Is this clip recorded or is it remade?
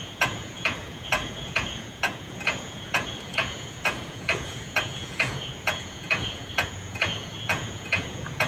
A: remade